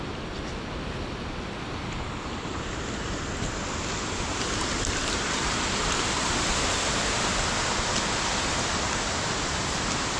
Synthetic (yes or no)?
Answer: no